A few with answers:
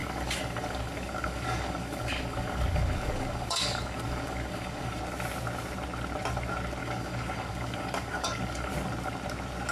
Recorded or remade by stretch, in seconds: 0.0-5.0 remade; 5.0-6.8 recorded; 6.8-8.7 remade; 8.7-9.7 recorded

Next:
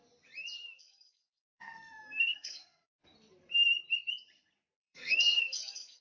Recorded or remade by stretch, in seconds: 0.0-0.8 recorded; 0.8-2.6 remade; 2.6-4.8 recorded; 4.8-6.0 remade

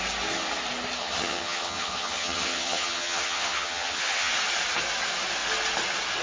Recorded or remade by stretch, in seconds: 0.0-1.0 recorded; 1.0-4.3 remade; 4.3-6.2 recorded

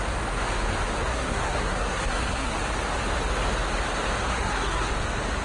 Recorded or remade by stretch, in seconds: 0.0-1.0 recorded; 1.0-2.5 remade; 2.5-4.3 recorded; 4.3-4.9 remade; 4.9-5.4 recorded

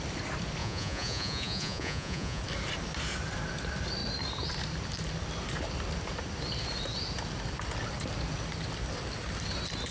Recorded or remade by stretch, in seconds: 0.0-0.6 recorded; 0.6-2.4 remade; 2.4-9.9 recorded

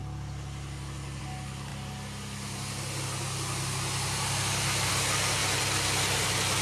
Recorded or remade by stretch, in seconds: 0.0-6.6 recorded